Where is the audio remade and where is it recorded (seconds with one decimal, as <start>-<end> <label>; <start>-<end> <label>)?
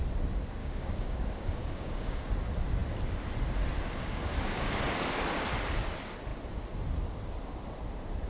0.0-0.6 recorded; 0.6-2.3 remade; 2.3-4.0 recorded; 4.0-4.8 remade; 4.8-8.3 recorded